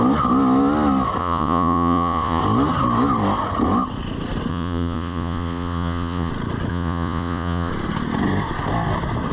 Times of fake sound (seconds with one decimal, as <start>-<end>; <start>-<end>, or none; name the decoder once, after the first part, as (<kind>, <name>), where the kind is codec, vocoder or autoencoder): 1.2-2.4 (vocoder, Vocos); 4.5-6.3; 6.7-7.7